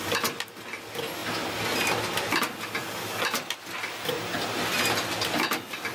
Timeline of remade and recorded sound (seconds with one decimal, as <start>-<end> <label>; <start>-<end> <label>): 0.0-5.9 recorded